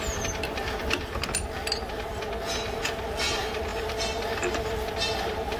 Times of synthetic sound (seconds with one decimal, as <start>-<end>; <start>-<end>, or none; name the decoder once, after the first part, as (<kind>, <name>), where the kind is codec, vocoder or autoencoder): none